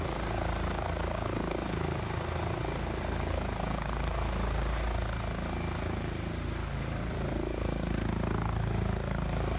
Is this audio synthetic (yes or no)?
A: no